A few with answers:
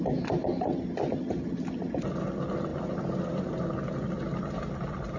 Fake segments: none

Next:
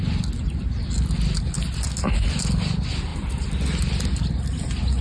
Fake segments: none

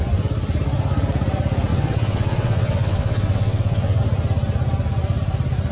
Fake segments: 1.7-4.0 (vocoder, WaveNeXt)

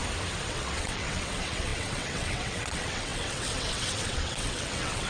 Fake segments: 0.5-5.1 (vocoder, WaveNeXt)

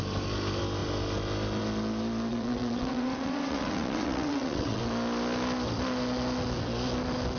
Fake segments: 2.3-4.8 (vocoder, WaveNeXt)

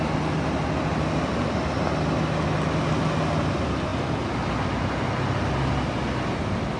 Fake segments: none

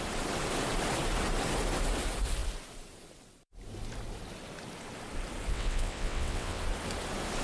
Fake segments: 5.5-6.6 (vocoder, WaveNeXt)

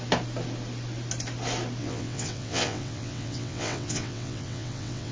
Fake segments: 1.8-5.1 (vocoder, WaveNeXt)